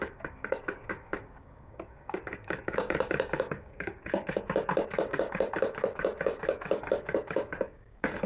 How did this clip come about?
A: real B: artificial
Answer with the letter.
B